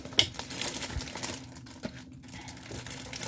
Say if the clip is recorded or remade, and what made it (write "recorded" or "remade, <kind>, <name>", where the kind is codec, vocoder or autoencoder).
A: recorded